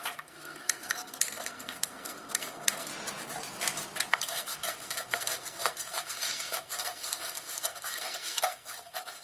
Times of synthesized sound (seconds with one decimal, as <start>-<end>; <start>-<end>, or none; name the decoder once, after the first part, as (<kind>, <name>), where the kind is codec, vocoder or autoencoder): 0.0-2.9 (codec, SNAC); 4.1-9.2